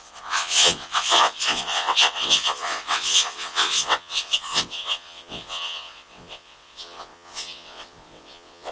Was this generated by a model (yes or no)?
yes